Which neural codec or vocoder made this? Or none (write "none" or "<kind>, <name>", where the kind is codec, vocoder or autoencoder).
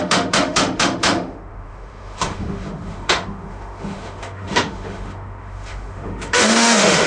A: autoencoder, DAC-VAE